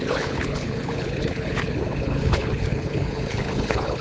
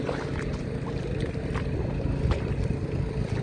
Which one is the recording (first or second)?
second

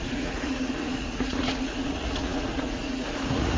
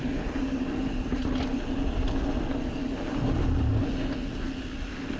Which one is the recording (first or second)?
second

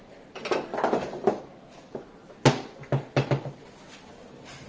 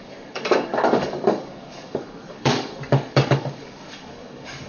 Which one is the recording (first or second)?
first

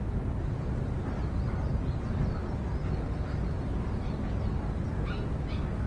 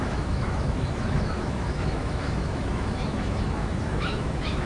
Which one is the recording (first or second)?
first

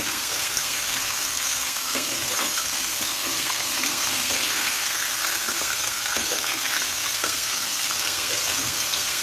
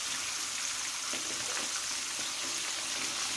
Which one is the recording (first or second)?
second